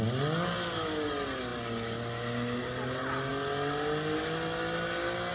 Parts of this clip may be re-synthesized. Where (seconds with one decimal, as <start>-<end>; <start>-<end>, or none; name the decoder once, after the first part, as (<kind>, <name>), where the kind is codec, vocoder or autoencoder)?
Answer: none